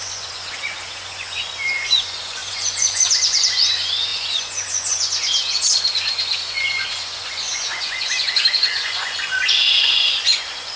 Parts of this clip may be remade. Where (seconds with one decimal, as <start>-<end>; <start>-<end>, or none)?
0.0-10.8

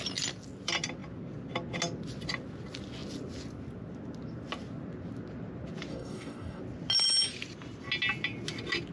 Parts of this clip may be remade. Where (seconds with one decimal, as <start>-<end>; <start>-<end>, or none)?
5.9-6.6

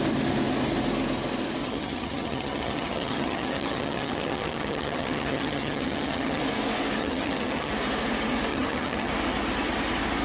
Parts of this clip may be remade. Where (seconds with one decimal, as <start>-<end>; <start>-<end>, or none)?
1.6-6.4; 7.0-7.7; 8.5-9.1

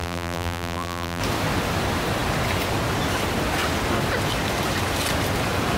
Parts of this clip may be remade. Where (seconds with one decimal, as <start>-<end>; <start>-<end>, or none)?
0.0-1.2

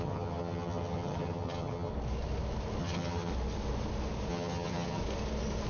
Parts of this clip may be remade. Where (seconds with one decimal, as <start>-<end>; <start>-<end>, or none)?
0.0-1.9; 2.8-3.3; 4.3-5.0

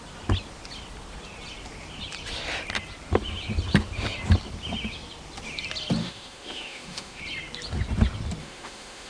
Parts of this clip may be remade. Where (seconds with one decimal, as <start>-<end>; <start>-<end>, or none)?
6.0-7.2; 8.4-9.1

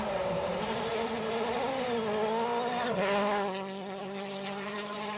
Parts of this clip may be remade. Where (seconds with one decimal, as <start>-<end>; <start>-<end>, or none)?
0.0-0.9; 4.0-5.2

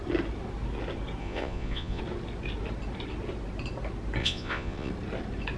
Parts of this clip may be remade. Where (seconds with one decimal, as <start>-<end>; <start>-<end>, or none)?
1.2-2.0; 4.2-4.9